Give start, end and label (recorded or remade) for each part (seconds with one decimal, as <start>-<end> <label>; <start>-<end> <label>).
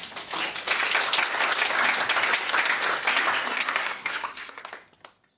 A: 0.0-3.5 recorded; 3.5-4.6 remade; 4.6-5.4 recorded